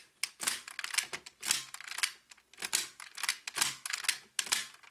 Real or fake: real